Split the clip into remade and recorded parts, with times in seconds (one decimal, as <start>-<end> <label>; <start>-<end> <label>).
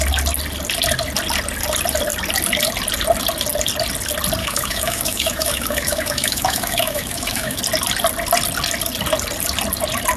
0.0-4.4 recorded; 4.4-7.6 remade; 7.6-10.2 recorded